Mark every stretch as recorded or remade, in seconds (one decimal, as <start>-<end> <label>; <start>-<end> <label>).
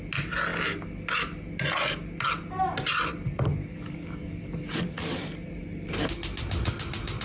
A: 0.0-3.6 recorded; 3.6-4.8 remade; 4.8-7.2 recorded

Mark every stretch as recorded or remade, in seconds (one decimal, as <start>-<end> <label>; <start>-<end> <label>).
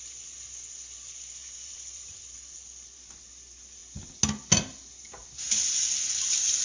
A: 0.0-1.4 recorded; 1.4-3.3 remade; 3.3-6.6 recorded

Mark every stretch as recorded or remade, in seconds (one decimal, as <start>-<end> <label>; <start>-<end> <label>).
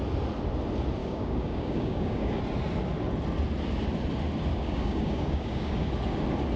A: 0.0-1.0 recorded; 1.0-2.4 remade; 2.4-4.5 recorded; 4.5-5.9 remade; 5.9-6.6 recorded